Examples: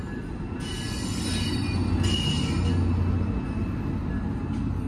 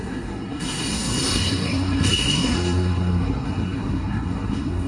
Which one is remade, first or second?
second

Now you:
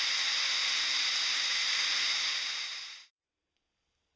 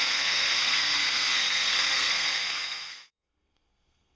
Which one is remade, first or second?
second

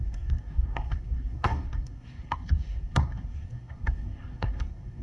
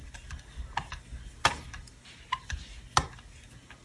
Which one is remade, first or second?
first